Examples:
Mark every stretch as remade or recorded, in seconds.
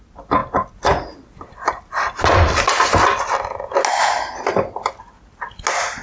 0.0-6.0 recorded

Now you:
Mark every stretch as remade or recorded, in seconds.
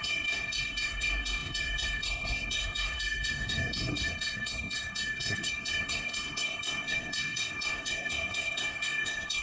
0.0-9.4 remade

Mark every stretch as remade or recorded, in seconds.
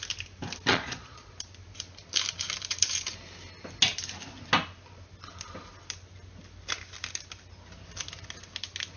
0.0-0.7 recorded; 0.7-1.3 remade; 1.3-9.0 recorded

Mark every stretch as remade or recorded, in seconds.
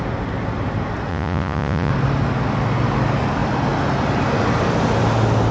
0.0-1.1 recorded; 1.1-1.9 remade; 1.9-5.5 recorded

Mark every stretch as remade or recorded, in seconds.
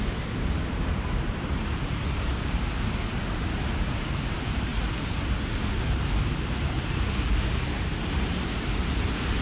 0.0-4.7 remade; 4.7-6.2 recorded; 6.2-9.4 remade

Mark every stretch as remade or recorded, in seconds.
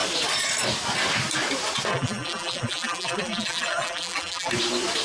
0.0-1.9 recorded; 1.9-4.5 remade; 4.5-5.0 recorded